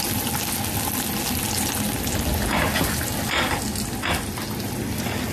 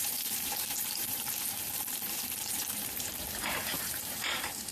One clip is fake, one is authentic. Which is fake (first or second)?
second